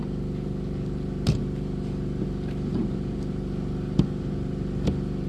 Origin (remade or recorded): recorded